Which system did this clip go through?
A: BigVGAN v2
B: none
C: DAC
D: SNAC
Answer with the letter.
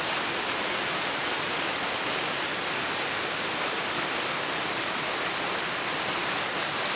B